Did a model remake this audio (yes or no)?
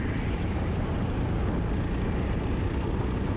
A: no